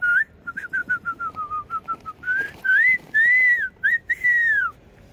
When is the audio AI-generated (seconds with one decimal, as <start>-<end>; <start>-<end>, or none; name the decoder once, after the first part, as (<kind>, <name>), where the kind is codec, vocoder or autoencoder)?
0.0-5.1 (vocoder, BigVGAN v2)